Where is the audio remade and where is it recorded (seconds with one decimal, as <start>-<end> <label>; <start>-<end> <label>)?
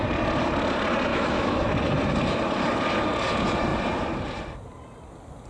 0.0-1.1 recorded; 1.1-1.7 remade; 1.7-5.5 recorded